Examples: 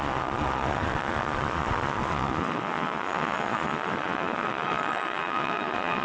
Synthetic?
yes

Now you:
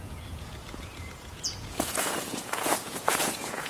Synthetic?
yes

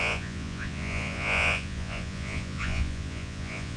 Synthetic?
yes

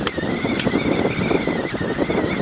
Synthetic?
no